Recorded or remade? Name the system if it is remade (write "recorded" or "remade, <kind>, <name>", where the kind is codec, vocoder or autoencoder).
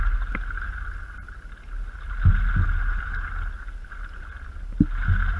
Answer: recorded